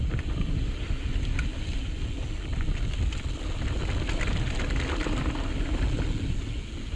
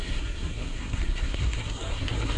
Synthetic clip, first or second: second